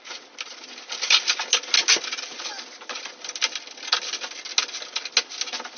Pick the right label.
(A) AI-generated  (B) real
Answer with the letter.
B